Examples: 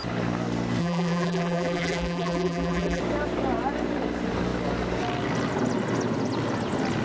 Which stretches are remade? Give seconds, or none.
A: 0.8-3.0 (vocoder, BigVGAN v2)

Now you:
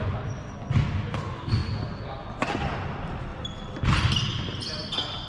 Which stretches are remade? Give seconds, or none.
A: 3.3-4.1 (vocoder, BigVGAN v2)

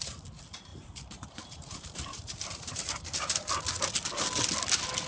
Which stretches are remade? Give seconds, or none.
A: 0.7-3.6 (vocoder, BigVGAN v2)

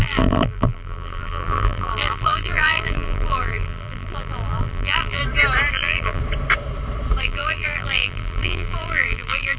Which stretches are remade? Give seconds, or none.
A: 0.0-5.2 (vocoder, BigVGAN v2); 5.7-6.2; 7.2-9.6

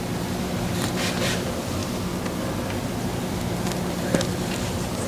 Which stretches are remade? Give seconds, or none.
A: 0.0-1.8 (vocoder, BigVGAN v2); 2.9-5.1